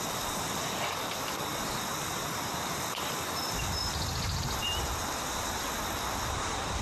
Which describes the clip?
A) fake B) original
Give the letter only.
A